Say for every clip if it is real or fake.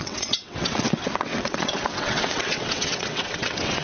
fake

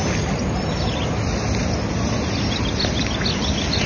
real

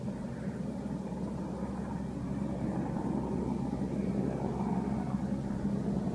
real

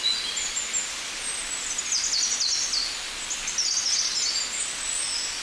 real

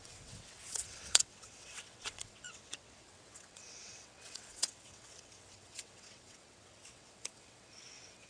fake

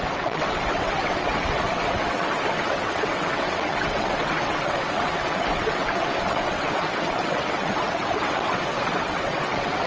fake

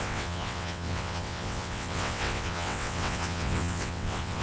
fake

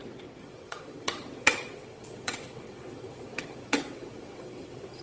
fake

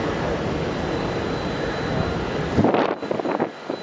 real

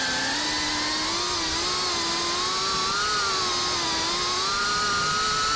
real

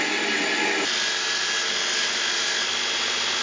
real